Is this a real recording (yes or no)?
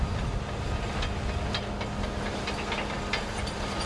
yes